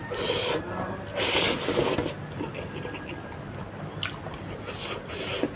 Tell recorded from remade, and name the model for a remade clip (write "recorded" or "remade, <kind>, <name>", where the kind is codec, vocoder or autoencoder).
recorded